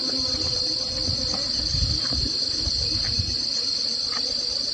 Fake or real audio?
real